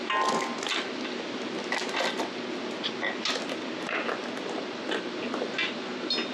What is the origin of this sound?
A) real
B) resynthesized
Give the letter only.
A